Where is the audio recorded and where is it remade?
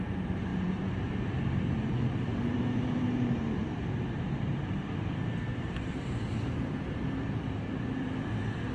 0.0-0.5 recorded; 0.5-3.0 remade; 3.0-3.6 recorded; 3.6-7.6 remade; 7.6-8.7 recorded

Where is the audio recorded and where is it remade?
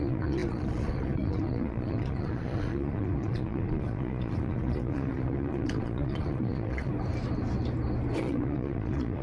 0.0-6.9 remade; 6.9-8.2 recorded; 8.2-9.2 remade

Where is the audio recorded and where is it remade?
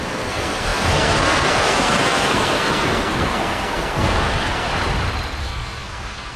0.0-4.7 remade; 4.7-5.4 recorded; 5.4-6.4 remade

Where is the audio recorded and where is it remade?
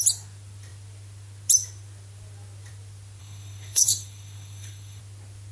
0.0-3.2 recorded; 3.2-5.0 remade; 5.0-5.5 recorded